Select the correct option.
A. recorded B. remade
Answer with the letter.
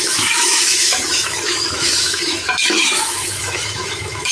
B